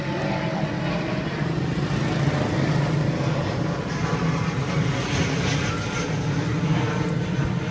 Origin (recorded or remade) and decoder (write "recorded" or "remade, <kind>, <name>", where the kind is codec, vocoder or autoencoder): recorded